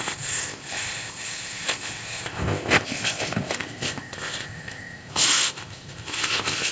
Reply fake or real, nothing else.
fake